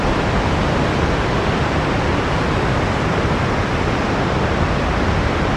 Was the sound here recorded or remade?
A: recorded